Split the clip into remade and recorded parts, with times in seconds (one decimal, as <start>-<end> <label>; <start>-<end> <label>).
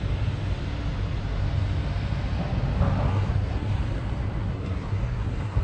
0.0-3.1 recorded; 3.1-3.8 remade; 3.8-4.4 recorded; 4.4-5.6 remade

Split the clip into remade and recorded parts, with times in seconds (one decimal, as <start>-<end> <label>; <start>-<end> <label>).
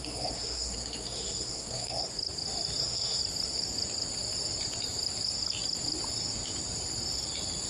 0.0-2.1 remade; 2.1-2.8 recorded; 2.8-3.2 remade; 3.2-7.7 recorded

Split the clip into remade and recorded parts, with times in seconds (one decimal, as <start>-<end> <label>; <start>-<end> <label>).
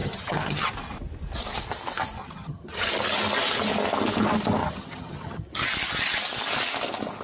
0.0-0.7 remade; 0.7-2.2 recorded; 2.2-2.9 remade; 2.9-4.6 recorded; 4.6-5.4 remade; 5.4-7.2 recorded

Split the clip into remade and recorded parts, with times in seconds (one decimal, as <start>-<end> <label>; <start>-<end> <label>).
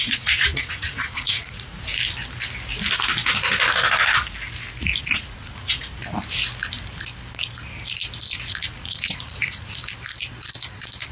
0.0-1.9 remade; 1.9-5.0 recorded; 5.0-6.0 remade; 6.0-8.5 recorded; 8.5-9.8 remade; 9.8-11.1 recorded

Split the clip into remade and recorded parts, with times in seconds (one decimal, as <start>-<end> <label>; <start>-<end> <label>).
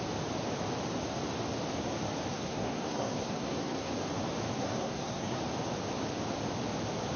0.0-2.3 recorded; 2.3-3.9 remade; 3.9-4.6 recorded; 4.6-5.4 remade; 5.4-7.2 recorded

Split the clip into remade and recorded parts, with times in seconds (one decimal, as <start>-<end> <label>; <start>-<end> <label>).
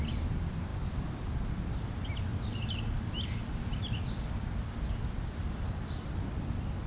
0.0-2.3 recorded; 2.3-6.4 remade; 6.4-6.9 recorded